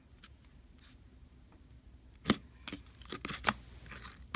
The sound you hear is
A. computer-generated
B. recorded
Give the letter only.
B